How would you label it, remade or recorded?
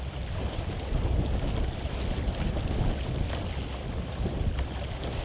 recorded